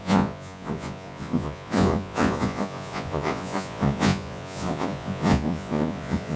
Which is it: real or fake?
fake